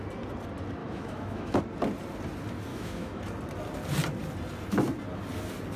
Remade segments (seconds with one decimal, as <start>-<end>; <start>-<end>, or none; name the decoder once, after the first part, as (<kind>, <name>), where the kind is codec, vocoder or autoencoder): 0.8-1.6 (autoencoder, DAC-VAE); 2.7-3.2